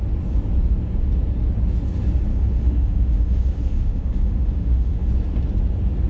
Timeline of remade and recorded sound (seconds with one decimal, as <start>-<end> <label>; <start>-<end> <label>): 0.0-2.3 recorded; 2.3-5.1 remade; 5.1-6.1 recorded